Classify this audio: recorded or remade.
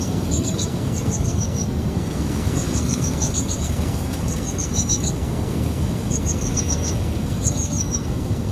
remade